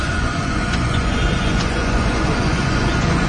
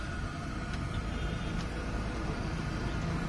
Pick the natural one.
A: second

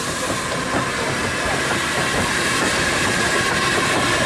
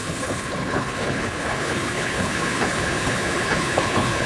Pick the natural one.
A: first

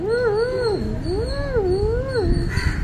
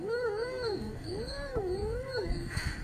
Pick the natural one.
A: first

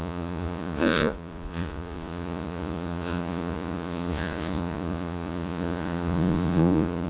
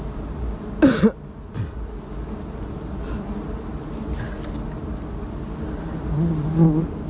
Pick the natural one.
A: second